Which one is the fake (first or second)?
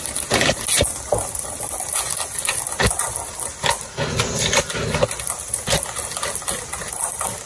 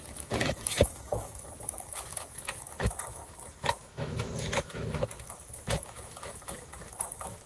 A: second